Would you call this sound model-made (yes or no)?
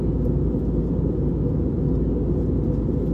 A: no